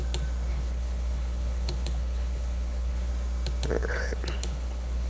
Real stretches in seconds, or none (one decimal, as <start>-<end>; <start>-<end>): 0.0-0.5; 3.1-3.8